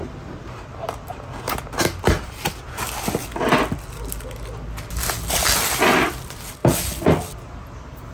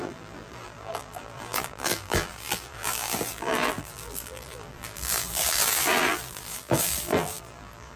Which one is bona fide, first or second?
first